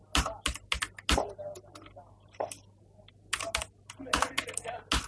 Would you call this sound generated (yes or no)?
no